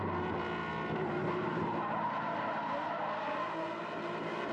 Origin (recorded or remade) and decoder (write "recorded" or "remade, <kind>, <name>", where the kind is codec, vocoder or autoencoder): recorded